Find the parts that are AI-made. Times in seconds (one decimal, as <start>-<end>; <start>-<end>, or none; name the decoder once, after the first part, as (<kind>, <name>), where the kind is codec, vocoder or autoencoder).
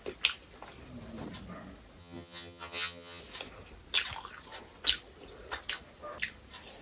2.0-3.2 (vocoder, HiFi-GAN)